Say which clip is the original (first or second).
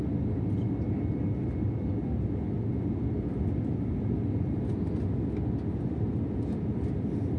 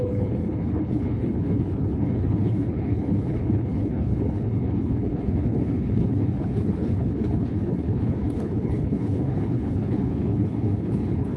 first